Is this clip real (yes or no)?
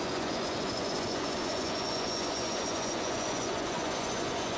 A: no